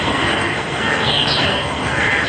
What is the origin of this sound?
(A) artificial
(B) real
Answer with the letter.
A